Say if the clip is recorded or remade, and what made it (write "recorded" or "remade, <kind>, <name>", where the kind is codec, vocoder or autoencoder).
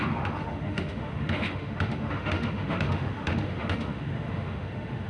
remade, autoencoder, DAC-VAE